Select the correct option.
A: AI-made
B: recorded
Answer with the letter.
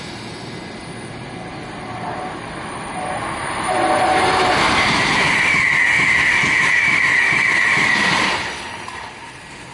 B